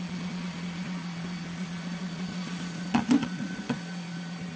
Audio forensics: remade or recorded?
remade